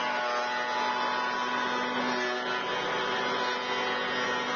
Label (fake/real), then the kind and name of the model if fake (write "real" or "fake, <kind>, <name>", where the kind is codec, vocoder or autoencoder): real